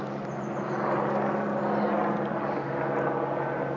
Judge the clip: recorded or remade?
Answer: recorded